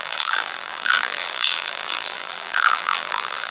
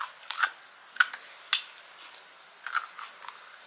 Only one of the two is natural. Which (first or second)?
second